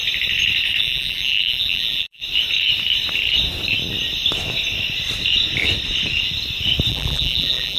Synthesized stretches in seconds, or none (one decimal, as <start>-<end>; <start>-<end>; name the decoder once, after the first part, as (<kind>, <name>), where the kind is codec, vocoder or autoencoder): 0.8-2.2 (vocoder, BigVGAN v2); 6.9-7.8